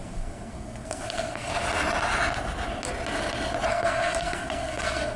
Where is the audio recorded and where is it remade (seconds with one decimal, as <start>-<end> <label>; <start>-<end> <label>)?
0.0-1.5 remade; 1.5-3.7 recorded; 3.7-5.2 remade